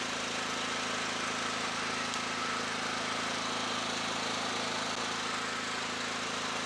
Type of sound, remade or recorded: recorded